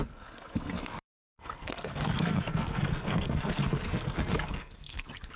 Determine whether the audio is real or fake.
fake